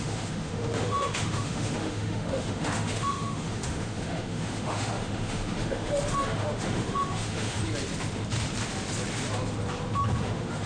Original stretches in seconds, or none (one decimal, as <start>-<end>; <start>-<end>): 7.6-10.2

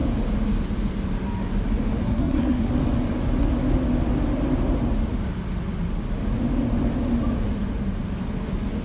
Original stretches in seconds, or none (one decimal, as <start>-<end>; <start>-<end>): 0.0-2.0; 2.7-8.8